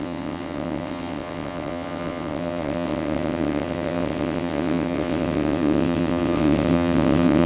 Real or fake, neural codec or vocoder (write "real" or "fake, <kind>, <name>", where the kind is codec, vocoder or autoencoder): fake, vocoder, WaveNeXt